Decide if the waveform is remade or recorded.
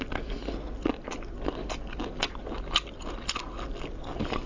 recorded